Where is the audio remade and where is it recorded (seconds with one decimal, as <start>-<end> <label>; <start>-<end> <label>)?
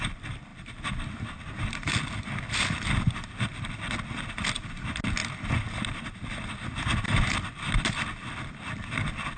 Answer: 0.0-9.4 recorded